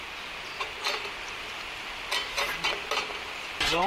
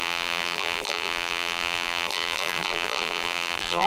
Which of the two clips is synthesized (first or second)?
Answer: second